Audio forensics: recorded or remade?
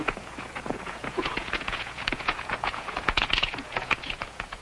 remade